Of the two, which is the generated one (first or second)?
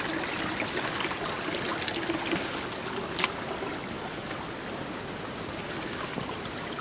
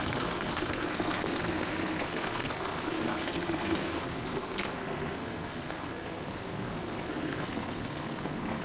second